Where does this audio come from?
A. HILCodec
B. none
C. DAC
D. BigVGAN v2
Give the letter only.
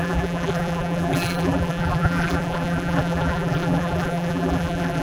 D